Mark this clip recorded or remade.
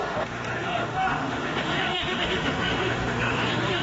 remade